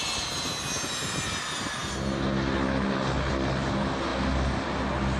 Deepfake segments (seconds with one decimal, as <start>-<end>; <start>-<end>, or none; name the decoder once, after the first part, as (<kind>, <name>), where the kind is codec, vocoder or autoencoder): none